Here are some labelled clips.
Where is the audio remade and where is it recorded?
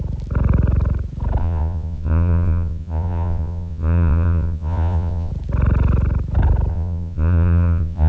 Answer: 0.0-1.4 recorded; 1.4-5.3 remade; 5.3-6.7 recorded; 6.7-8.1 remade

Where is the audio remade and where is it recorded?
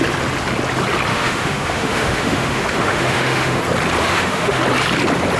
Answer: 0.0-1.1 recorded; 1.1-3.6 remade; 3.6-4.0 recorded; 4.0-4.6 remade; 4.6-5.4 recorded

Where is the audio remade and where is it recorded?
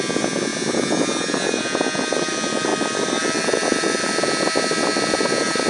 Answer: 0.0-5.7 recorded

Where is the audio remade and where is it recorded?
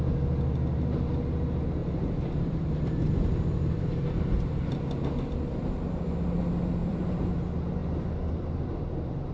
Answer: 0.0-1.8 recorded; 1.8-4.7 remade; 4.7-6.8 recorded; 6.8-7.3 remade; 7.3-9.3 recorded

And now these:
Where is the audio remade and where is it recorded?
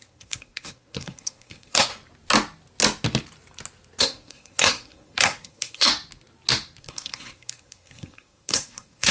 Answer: 0.0-1.9 remade; 1.9-4.0 recorded; 4.0-5.9 remade; 5.9-6.8 recorded; 6.8-9.1 remade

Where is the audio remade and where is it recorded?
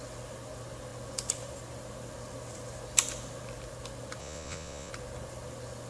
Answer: 0.0-4.2 recorded; 4.2-4.9 remade; 4.9-5.9 recorded